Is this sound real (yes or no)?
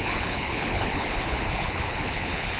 no